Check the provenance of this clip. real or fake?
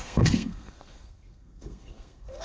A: fake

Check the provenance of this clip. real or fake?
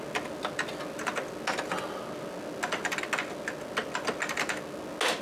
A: real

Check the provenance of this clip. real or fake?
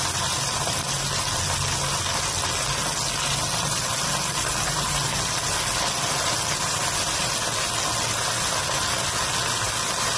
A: real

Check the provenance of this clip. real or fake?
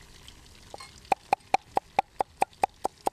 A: real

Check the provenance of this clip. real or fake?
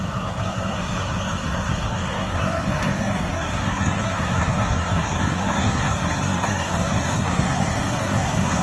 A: fake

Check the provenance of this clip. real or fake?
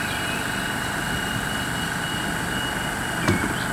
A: real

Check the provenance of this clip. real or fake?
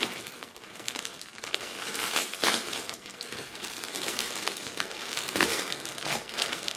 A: fake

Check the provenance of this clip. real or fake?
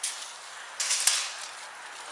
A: real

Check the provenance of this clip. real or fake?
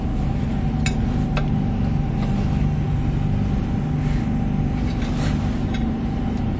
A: real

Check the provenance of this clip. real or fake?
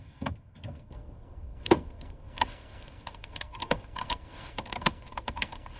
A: fake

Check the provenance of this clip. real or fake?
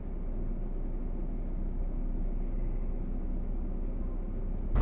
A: real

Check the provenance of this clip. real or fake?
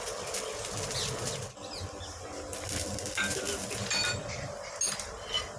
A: real